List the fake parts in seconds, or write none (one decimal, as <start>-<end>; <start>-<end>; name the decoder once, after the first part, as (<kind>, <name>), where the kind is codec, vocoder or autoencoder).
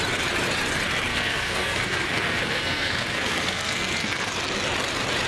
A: 1.1-4.3 (codec, SNAC)